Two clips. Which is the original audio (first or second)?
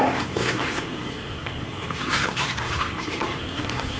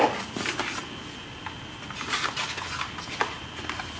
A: second